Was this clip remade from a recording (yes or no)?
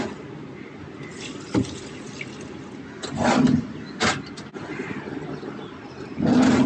no